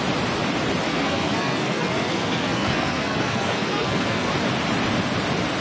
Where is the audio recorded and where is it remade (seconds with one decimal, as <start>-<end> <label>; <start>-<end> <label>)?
0.0-0.9 recorded; 0.9-4.3 remade; 4.3-5.6 recorded

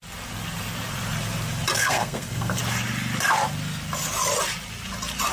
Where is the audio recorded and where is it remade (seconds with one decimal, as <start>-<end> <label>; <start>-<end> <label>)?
0.0-1.8 recorded; 1.8-2.6 remade; 2.6-5.3 recorded

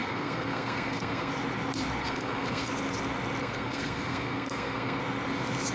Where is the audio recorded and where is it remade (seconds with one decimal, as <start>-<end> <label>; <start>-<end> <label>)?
0.0-1.3 remade; 1.3-2.0 recorded; 2.0-2.7 remade; 2.7-3.4 recorded; 3.4-5.0 remade; 5.0-5.7 recorded

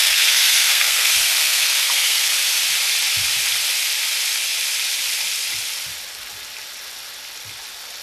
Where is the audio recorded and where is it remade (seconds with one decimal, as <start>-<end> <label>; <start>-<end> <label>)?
0.0-2.3 remade; 2.3-8.0 recorded